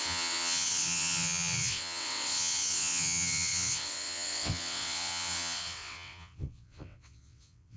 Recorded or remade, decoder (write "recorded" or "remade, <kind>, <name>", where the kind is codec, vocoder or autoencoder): remade, vocoder, WaveNeXt